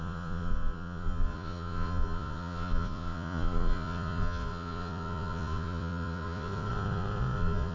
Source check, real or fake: fake